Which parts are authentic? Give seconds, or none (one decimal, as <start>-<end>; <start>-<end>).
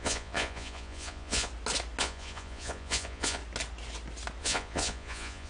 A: 1.5-2.0; 3.4-4.4